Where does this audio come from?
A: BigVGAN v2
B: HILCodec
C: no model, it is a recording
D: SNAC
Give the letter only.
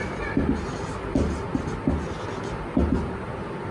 C